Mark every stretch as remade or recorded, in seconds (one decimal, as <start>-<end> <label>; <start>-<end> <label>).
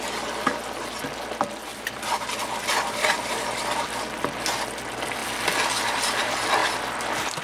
0.0-1.7 recorded; 1.7-4.2 remade; 4.2-6.6 recorded; 6.6-7.4 remade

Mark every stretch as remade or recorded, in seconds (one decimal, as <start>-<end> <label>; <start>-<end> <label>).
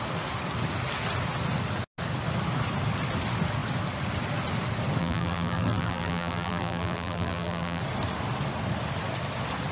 0.0-5.0 recorded; 5.0-7.8 remade; 7.8-9.7 recorded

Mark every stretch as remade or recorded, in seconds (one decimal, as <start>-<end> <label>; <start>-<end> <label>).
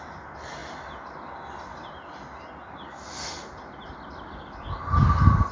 0.0-5.5 recorded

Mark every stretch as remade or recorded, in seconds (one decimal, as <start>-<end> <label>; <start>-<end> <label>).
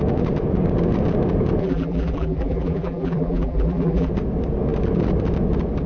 0.0-1.6 recorded; 1.6-4.1 remade; 4.1-5.9 recorded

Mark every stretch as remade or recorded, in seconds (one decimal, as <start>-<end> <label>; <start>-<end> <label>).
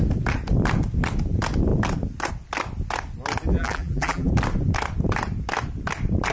0.0-3.5 recorded; 3.5-4.3 remade; 4.3-6.3 recorded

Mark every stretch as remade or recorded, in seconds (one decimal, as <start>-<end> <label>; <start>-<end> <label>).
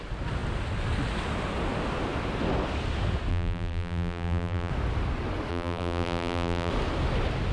0.0-3.3 recorded; 3.3-4.7 remade; 4.7-5.5 recorded; 5.5-6.7 remade; 6.7-7.5 recorded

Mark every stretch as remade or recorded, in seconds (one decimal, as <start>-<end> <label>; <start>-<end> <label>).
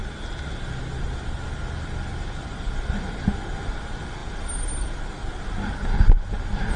0.0-6.8 recorded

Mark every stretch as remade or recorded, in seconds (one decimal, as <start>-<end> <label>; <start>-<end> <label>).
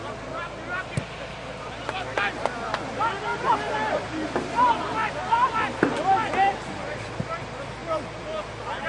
0.0-3.3 recorded; 3.3-5.3 remade; 5.3-8.9 recorded